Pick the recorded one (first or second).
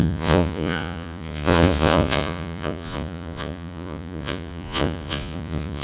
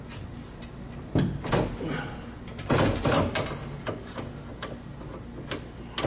second